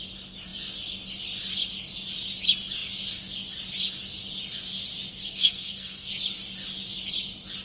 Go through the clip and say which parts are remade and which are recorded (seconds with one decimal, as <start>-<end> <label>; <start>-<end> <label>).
0.0-5.1 recorded; 5.1-6.1 remade; 6.1-7.6 recorded